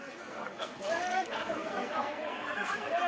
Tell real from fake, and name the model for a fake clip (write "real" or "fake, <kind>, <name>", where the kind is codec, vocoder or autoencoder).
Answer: fake, codec, SNAC